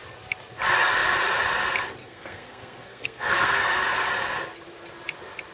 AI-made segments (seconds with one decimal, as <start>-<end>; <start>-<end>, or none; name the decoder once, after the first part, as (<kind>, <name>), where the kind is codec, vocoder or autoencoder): 2.0-3.8 (codec, SNAC)